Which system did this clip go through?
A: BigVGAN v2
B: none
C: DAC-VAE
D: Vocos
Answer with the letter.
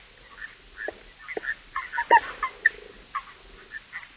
B